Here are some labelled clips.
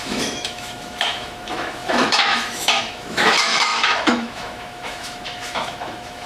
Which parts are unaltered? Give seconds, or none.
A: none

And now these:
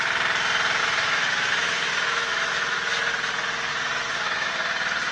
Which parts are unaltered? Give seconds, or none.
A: 0.0-0.8; 3.1-3.7; 4.5-5.1

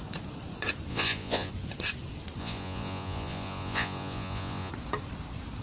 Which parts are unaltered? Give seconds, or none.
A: 0.0-0.9; 1.5-2.4; 4.7-5.6

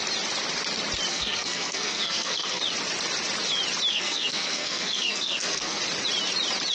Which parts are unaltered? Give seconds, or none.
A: 0.0-1.1; 2.6-3.9; 5.8-6.7

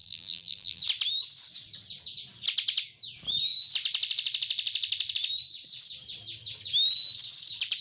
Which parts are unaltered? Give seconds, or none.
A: 0.8-7.8